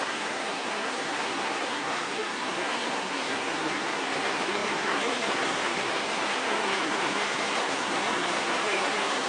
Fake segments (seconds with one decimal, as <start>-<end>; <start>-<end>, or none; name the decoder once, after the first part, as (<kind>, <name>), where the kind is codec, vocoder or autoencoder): 0.0-9.3 (codec, SNAC)